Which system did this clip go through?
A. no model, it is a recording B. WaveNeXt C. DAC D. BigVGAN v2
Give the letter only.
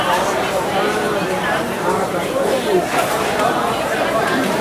D